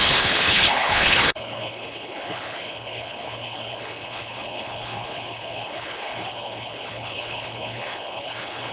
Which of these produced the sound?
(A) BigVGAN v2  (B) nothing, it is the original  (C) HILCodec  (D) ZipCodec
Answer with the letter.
C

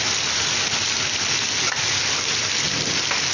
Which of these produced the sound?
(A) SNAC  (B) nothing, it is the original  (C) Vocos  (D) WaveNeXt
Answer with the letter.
B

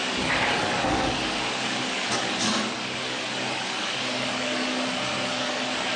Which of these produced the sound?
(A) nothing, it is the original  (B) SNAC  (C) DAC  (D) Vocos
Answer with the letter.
C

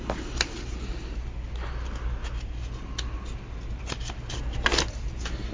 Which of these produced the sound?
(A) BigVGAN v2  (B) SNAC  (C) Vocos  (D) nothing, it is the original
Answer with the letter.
D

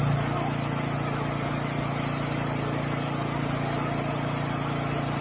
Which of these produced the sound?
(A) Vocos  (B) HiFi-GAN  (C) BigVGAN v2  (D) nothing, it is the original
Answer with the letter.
D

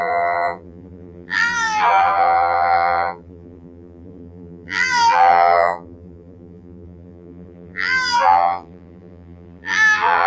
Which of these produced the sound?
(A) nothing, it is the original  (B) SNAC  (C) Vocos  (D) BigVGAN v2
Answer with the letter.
D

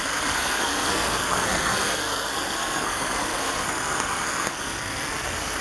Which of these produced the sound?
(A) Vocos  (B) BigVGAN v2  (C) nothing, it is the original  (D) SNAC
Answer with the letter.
D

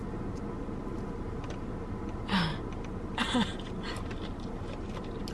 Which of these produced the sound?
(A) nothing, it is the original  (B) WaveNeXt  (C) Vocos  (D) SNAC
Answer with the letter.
A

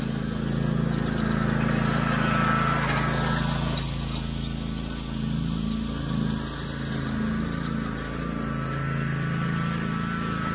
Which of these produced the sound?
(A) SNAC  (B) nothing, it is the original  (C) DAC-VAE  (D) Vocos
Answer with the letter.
B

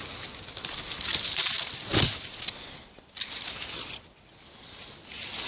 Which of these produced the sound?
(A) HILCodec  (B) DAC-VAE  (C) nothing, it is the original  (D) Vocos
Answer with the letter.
C